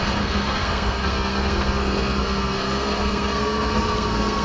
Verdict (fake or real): fake